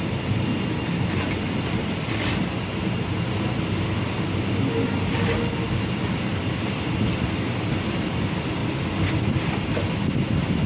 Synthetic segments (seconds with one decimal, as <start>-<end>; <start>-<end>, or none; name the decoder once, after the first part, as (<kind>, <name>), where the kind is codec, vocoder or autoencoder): 8.6-9.1 (vocoder, BigVGAN v2)